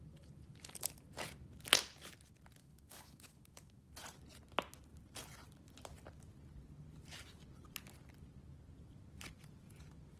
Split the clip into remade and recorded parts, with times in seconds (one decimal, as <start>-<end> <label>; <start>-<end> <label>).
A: 0.0-2.6 recorded; 2.6-3.9 remade; 3.9-10.2 recorded